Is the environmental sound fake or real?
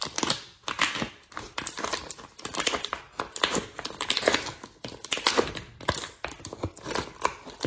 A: real